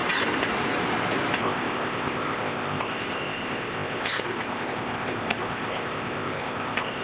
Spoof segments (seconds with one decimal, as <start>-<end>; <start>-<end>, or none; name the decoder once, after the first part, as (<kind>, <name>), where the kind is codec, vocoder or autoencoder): 1.4-7.0 (codec, ZipCodec)